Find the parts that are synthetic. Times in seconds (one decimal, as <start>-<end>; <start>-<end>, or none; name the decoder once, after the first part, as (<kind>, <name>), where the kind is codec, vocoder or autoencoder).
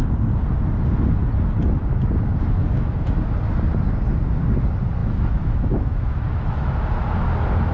2.6-3.2 (autoencoder, DAC-VAE); 5.0-6.8